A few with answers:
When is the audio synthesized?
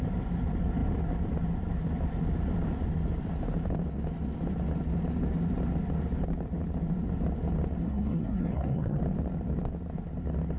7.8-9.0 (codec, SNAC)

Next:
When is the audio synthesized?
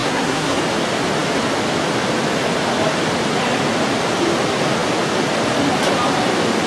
0.0-0.6 (codec, SNAC)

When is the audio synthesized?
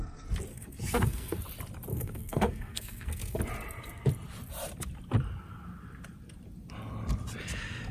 0.5-1.4 (codec, SNAC); 1.9-3.4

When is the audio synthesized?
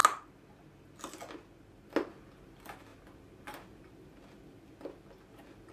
none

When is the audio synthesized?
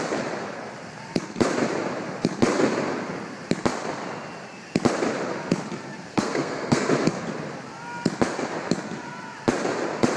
6.1-6.9 (codec, SNAC)